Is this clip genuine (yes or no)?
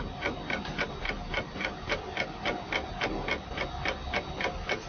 yes